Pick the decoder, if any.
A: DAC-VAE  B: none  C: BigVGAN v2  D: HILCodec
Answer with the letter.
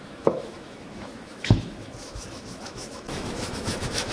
A